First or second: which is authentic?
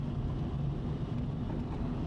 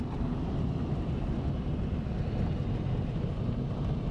first